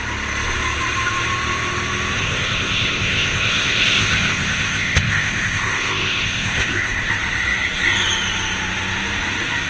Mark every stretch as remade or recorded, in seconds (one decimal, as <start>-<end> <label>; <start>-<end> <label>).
0.0-2.2 recorded; 2.2-7.1 remade; 7.1-9.7 recorded